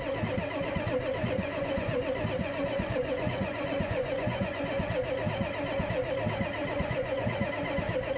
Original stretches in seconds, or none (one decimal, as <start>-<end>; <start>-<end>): 0.0-1.2; 2.0-2.4; 4.6-6.6; 7.5-8.2